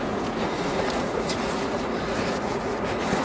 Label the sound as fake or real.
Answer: fake